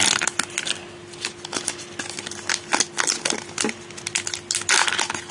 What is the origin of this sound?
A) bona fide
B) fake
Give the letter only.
A